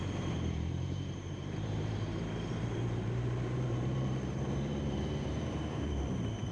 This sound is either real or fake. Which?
fake